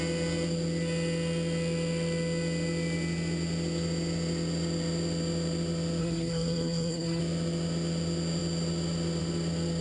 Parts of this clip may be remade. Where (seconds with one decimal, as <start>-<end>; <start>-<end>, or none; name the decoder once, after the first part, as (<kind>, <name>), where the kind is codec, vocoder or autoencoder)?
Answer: 6.0-7.2 (codec, SNAC)